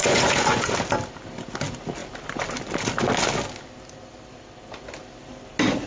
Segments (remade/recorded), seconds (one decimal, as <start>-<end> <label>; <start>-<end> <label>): 0.0-0.7 remade; 0.7-5.9 recorded